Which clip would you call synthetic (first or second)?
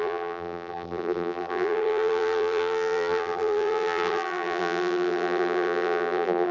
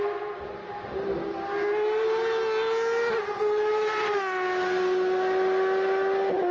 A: first